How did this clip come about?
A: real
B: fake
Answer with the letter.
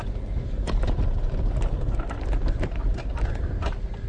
A